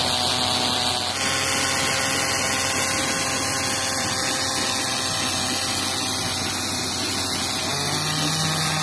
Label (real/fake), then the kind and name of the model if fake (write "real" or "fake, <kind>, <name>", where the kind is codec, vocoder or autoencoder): real